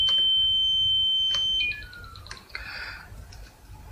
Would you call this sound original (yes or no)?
yes